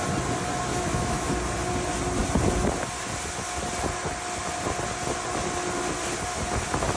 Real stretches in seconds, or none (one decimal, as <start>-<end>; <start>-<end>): 0.0-0.7; 1.3-7.0